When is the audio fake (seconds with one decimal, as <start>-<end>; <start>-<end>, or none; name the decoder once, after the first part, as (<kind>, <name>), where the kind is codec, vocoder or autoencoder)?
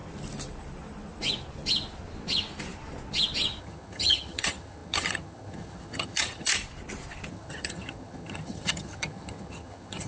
3.6-6.5 (vocoder, HiFi-GAN); 7.3-10.1